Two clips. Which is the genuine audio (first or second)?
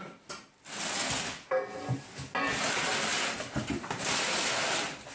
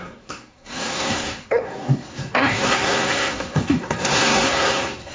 first